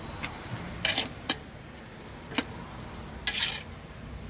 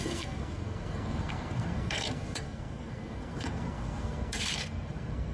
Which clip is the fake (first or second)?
second